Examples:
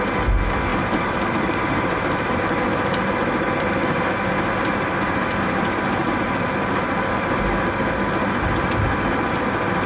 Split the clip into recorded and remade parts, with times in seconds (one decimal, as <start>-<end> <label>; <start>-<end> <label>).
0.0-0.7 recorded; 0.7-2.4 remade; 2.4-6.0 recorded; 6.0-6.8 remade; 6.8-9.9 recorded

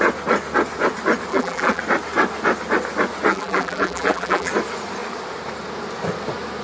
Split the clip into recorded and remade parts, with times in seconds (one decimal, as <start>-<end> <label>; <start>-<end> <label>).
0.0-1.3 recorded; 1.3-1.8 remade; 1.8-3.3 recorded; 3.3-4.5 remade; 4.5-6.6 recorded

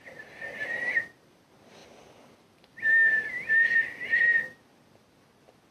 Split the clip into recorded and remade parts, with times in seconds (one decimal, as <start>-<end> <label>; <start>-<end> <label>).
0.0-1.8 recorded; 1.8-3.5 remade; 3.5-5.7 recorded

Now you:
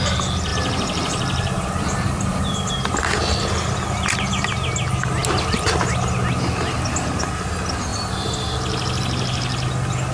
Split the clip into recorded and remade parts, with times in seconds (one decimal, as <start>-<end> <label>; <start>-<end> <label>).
0.0-0.5 recorded; 0.5-2.7 remade; 2.7-7.9 recorded; 7.9-8.5 remade; 8.5-10.1 recorded

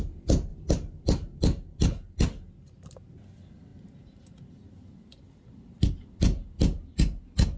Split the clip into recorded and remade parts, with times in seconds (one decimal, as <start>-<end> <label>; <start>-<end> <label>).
0.0-7.6 recorded